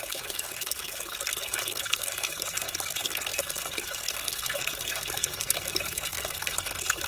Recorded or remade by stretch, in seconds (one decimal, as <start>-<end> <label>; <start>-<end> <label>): 0.0-7.1 remade

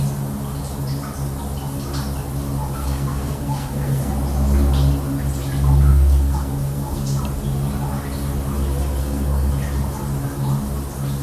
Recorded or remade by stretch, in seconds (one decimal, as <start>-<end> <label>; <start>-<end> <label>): 0.0-2.8 recorded; 2.8-4.1 remade; 4.1-5.9 recorded; 5.9-7.2 remade; 7.2-9.0 recorded; 9.0-9.5 remade; 9.5-11.2 recorded

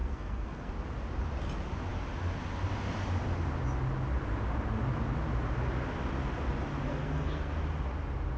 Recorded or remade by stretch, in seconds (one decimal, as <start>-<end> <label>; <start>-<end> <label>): 0.0-0.7 remade; 0.7-6.9 recorded; 6.9-7.5 remade; 7.5-8.4 recorded